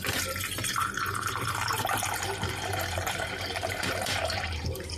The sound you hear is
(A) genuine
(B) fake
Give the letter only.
B